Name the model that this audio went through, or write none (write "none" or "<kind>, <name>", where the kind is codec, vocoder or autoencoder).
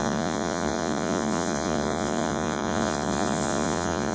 vocoder, Vocos